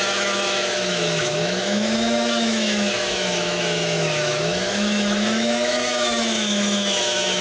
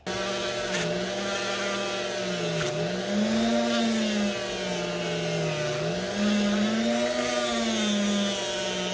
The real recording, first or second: second